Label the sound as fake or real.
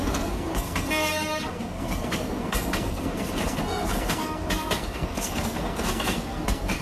fake